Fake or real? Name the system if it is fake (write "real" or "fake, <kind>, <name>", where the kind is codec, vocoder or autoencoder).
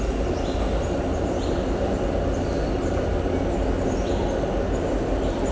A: real